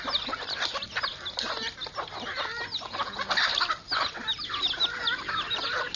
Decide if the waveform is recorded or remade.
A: recorded